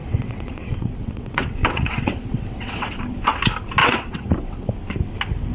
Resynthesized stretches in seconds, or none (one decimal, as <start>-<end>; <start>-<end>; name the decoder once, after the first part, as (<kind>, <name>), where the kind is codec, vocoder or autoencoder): 0.0-3.0 (vocoder, WaveNeXt); 3.8-4.7